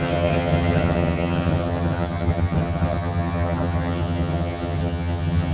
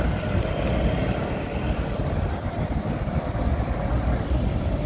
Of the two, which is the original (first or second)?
second